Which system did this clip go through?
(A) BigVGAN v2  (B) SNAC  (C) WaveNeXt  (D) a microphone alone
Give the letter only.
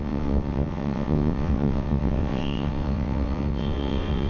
C